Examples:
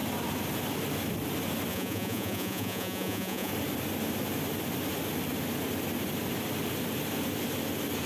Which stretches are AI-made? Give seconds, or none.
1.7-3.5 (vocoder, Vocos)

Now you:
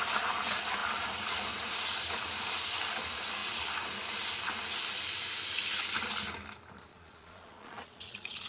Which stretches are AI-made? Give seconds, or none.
6.9-8.5 (vocoder, Vocos)

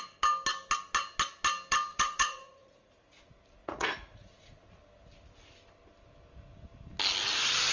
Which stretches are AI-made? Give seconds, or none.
1.9-3.2 (vocoder, Vocos); 3.6-4.8